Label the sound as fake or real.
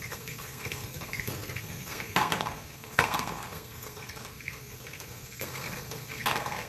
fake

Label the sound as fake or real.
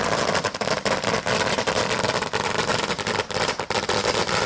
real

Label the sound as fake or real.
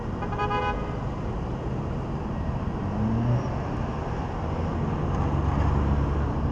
real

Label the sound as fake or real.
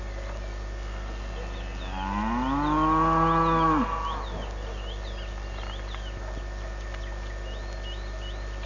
real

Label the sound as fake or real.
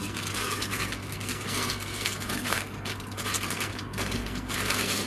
fake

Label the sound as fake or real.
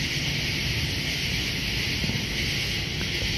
real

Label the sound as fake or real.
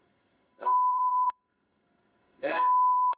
fake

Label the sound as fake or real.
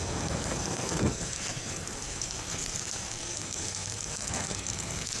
fake